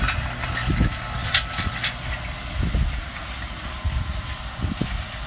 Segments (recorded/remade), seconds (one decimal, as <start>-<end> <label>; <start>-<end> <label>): 0.0-5.3 recorded